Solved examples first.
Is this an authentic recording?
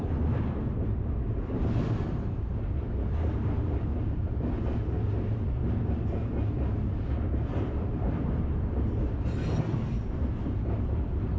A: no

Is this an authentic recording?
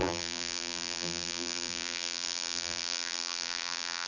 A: no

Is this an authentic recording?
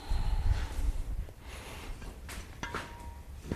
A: no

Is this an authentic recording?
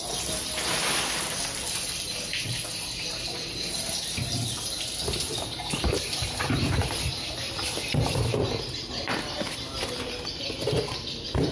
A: no